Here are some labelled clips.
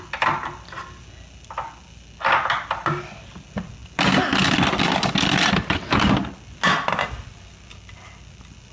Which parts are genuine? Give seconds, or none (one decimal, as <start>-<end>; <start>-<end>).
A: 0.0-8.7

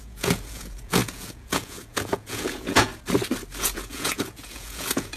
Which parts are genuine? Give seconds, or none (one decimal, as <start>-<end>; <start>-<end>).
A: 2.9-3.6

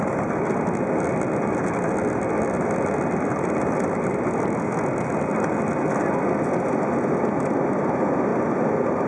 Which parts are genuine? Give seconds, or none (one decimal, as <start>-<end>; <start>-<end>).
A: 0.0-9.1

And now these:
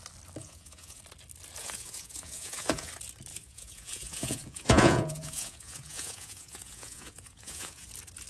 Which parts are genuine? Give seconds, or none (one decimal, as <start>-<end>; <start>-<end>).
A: 0.0-0.4; 1.0-1.6; 2.9-3.3; 7.9-8.3

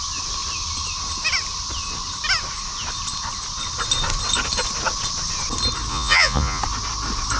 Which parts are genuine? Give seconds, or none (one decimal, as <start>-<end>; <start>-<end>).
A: 0.0-5.9; 6.6-7.4

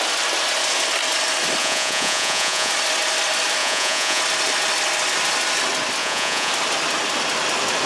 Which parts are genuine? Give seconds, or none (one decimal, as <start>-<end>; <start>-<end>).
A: 0.0-1.6; 2.7-3.6; 4.2-6.0; 6.5-7.9